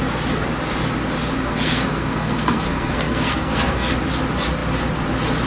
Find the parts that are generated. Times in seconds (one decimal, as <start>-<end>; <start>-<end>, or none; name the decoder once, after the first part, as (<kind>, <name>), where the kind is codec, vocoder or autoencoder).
1.5-3.9 (codec, SNAC)

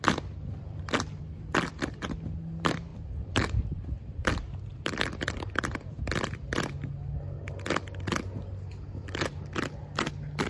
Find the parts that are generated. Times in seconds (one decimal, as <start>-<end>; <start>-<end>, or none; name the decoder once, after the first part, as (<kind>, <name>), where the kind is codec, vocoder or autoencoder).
2.9-6.0 (vocoder, BigVGAN v2)